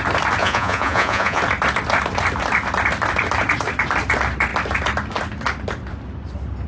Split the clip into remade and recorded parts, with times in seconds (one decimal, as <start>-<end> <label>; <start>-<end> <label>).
0.0-0.4 recorded; 0.4-1.4 remade; 1.4-6.7 recorded